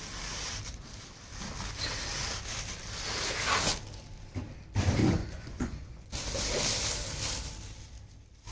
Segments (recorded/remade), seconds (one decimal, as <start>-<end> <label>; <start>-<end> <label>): 0.0-5.0 recorded; 5.0-6.1 remade; 6.1-8.5 recorded